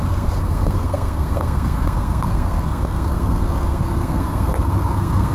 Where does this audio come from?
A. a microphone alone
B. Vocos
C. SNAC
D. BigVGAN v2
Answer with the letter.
C